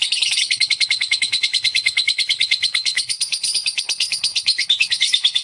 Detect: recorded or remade remade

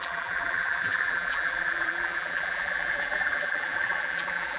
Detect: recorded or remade remade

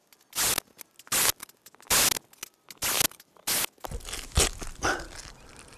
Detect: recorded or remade recorded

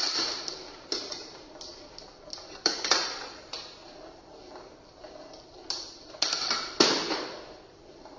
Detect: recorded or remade remade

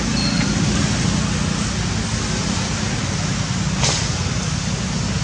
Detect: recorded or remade recorded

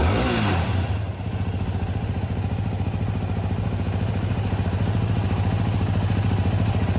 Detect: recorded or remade recorded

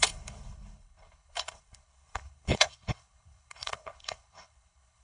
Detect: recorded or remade remade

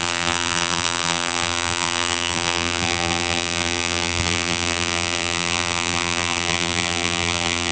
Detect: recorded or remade remade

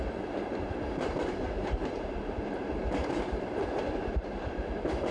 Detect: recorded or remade remade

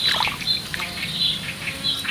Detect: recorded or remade recorded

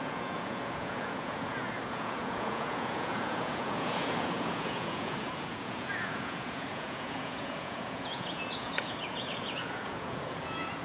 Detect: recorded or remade remade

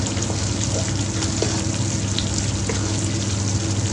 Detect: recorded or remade recorded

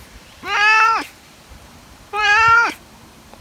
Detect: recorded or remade remade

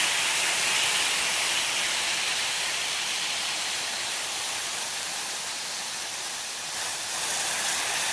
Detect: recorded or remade recorded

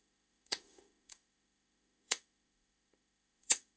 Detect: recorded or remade remade